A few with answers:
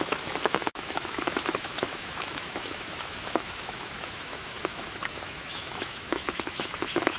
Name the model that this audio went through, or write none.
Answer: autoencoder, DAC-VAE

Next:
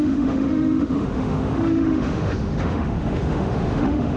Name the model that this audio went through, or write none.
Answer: autoencoder, DAC-VAE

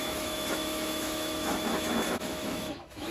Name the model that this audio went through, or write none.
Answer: autoencoder, DAC-VAE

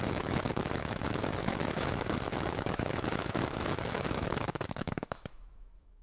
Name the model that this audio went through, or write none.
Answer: autoencoder, DAC-VAE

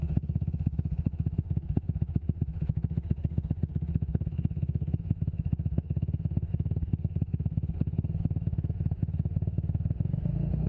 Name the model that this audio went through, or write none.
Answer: autoencoder, DAC-VAE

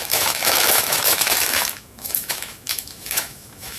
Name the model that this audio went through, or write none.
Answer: autoencoder, DAC-VAE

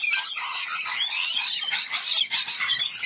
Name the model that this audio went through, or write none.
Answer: none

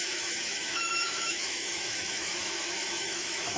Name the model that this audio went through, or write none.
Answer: autoencoder, DAC-VAE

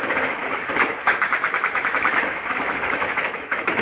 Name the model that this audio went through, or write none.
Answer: autoencoder, DAC-VAE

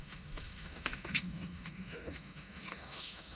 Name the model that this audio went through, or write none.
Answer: autoencoder, DAC-VAE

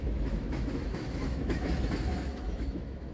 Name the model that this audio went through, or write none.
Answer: autoencoder, DAC-VAE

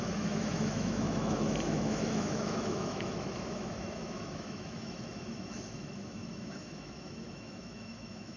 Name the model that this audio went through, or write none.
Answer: autoencoder, DAC-VAE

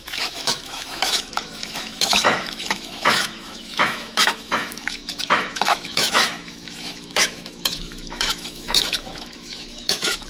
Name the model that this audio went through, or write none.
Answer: autoencoder, DAC-VAE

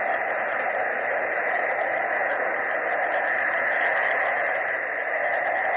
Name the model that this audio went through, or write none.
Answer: none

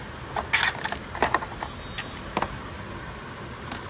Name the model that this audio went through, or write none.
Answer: none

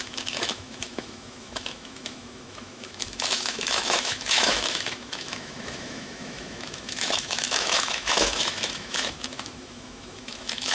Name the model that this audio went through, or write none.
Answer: autoencoder, DAC-VAE